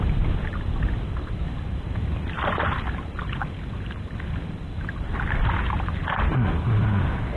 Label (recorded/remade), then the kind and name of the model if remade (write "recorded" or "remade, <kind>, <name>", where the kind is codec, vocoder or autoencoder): recorded